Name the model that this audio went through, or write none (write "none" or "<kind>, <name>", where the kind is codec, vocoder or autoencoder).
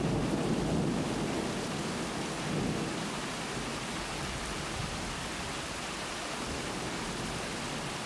none